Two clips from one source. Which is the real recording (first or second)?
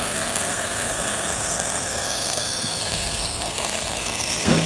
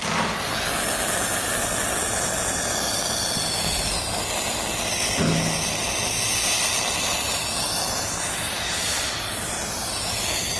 second